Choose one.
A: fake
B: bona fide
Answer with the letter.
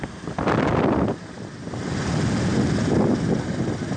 B